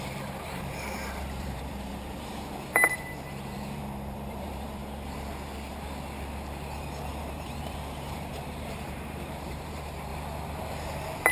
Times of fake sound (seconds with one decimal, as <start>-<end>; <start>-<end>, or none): 0.0-4.8; 7.2-10.1